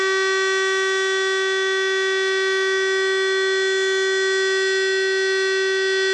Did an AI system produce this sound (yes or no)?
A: no